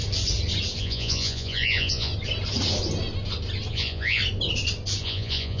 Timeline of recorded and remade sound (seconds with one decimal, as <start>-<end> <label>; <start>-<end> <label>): 0.0-0.8 recorded; 0.8-2.1 remade; 2.1-3.7 recorded; 3.7-4.2 remade; 4.2-5.0 recorded; 5.0-5.6 remade